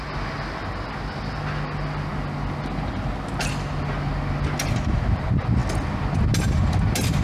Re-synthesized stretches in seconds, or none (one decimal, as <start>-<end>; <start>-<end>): none